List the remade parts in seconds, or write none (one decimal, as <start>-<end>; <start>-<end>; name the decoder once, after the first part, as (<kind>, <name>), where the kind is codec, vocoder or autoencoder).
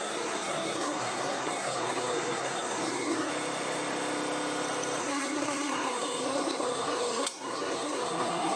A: 0.0-3.3 (codec, SNAC); 5.0-8.6